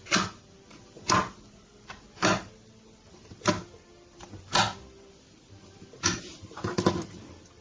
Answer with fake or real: real